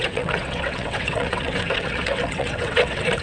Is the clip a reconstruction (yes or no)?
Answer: yes